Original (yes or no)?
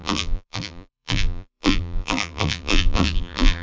no